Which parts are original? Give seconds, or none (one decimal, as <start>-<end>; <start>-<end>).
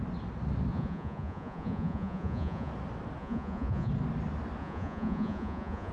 0.0-0.7; 2.7-3.2; 3.9-4.6